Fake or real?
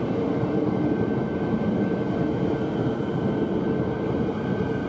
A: real